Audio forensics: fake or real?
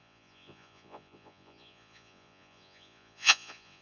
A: fake